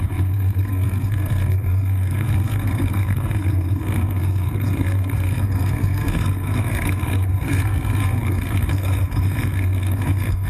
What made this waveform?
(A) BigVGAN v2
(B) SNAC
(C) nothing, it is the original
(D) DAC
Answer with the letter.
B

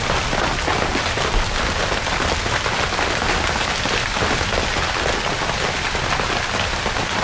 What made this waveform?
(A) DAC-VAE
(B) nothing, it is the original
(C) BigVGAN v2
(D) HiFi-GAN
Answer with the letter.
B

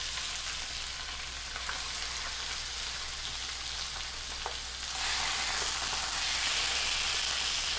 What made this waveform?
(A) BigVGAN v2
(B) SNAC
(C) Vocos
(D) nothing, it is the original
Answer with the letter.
D